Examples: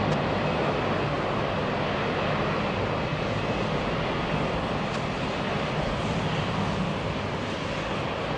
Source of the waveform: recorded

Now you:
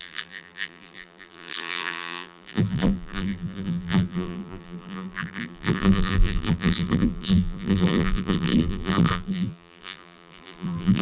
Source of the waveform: remade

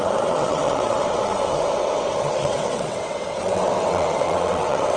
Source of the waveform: remade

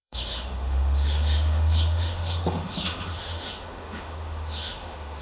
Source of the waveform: remade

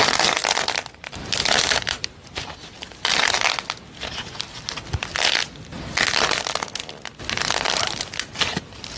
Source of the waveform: recorded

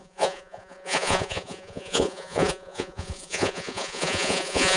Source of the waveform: remade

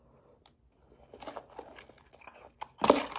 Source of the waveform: recorded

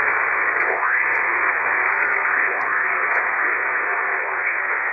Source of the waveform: remade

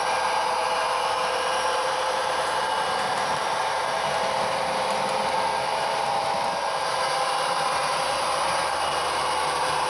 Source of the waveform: remade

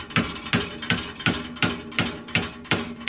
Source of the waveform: recorded